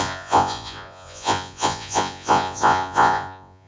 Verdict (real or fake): fake